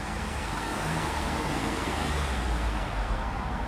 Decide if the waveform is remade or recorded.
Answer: remade